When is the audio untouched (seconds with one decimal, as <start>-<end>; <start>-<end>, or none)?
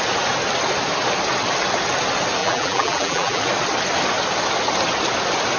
0.0-2.4; 3.4-5.6